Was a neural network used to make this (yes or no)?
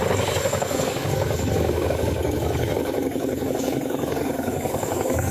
yes